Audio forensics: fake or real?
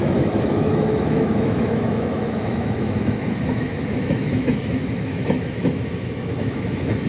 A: fake